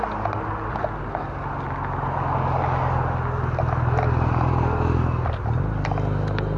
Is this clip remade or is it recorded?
recorded